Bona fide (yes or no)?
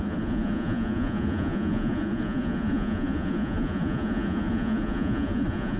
no